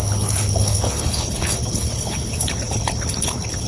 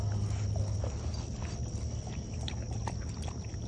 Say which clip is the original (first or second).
second